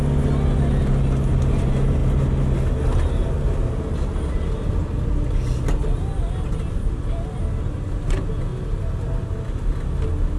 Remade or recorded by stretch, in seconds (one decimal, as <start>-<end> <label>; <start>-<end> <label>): 0.0-10.4 recorded